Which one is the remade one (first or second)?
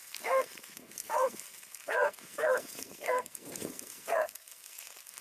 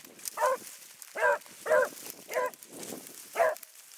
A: first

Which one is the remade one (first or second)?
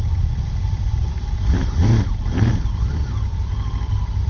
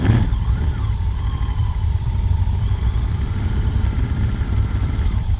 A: second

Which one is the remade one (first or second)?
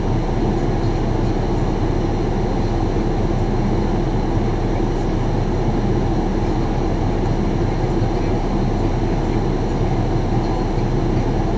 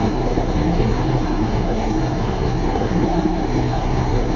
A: second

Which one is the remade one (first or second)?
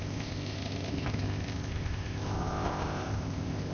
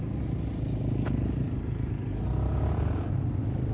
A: first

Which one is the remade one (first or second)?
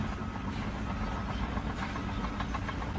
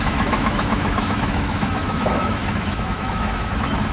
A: second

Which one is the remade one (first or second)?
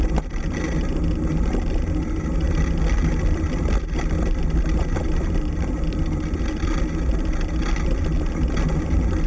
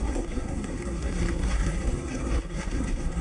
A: second